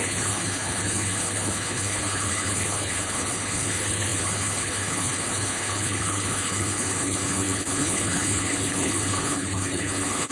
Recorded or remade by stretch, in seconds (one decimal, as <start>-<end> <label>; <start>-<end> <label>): 0.0-10.3 remade